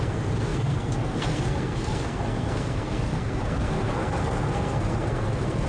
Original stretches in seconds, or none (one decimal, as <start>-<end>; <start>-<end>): none